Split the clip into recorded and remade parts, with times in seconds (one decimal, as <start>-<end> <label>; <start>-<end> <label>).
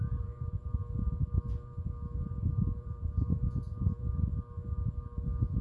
0.0-0.8 remade; 0.8-2.2 recorded; 2.2-4.3 remade; 4.3-5.6 recorded